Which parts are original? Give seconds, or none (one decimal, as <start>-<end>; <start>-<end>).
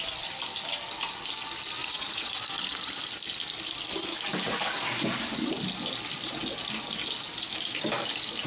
0.0-1.8; 2.4-8.5